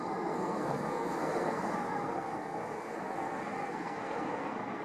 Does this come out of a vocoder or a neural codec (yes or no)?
yes